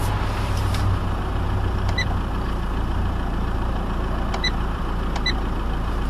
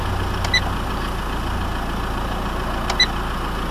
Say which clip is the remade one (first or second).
first